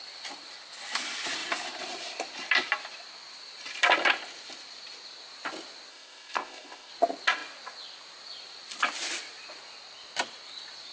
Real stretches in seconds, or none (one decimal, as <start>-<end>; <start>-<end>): 0.0-5.9; 6.9-10.9